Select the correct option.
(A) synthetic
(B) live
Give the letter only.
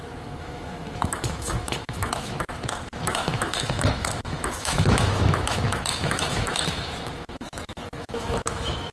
A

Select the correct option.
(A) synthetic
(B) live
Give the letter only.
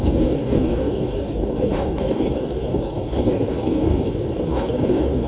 A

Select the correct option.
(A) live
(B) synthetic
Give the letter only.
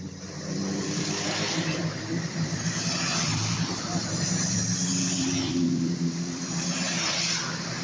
B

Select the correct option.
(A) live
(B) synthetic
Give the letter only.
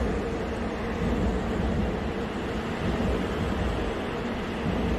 A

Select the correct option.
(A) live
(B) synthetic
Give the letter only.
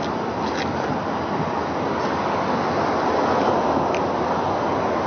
A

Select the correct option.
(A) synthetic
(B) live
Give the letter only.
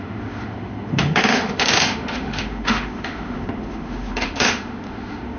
A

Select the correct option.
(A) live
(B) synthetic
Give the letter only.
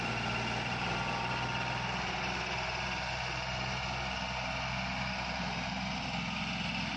A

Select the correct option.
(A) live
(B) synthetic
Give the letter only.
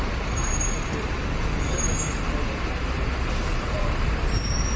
B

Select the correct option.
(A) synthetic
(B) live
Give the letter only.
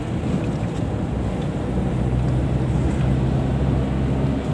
B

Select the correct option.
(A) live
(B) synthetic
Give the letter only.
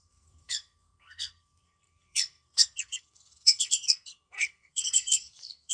B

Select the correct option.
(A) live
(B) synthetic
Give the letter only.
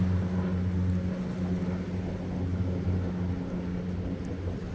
A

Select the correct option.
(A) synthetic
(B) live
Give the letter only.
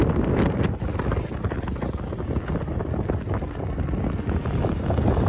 B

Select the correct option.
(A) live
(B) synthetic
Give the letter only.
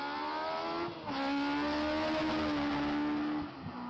A